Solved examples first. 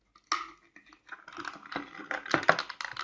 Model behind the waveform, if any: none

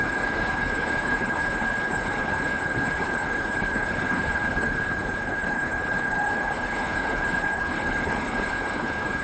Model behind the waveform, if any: codec, HILCodec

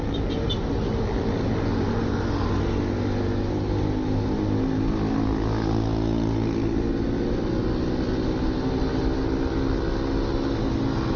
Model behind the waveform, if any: none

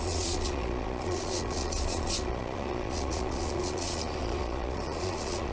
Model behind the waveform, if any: vocoder, Vocos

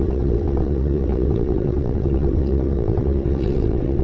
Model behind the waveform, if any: vocoder, WaveNeXt